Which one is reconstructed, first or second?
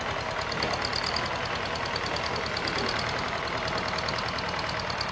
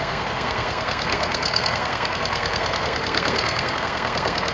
second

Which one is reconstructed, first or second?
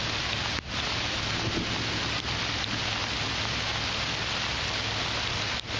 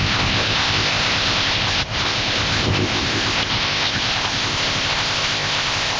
second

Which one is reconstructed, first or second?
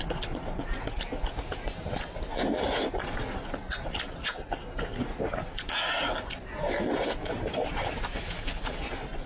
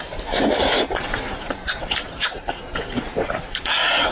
second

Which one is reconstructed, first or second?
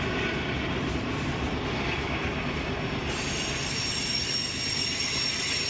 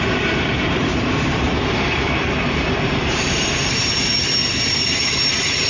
second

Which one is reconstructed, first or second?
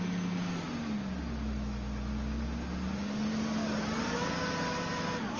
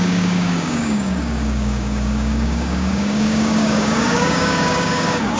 second